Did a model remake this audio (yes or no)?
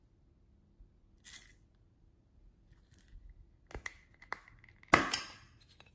no